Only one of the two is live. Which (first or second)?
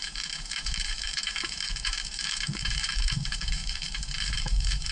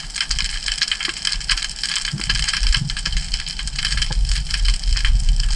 second